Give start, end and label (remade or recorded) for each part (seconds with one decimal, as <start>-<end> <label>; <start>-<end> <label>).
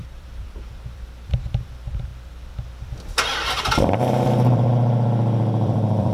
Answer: 0.0-2.1 remade; 2.1-3.6 recorded; 3.6-6.1 remade